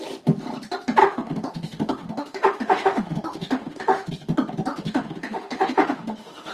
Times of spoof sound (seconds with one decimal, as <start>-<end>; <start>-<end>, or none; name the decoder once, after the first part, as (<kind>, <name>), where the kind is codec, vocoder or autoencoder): 1.0-4.1 (autoencoder, DAC-VAE); 4.7-6.5